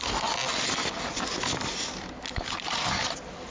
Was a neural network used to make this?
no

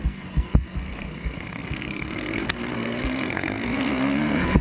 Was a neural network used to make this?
yes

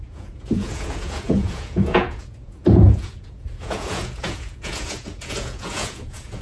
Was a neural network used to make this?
yes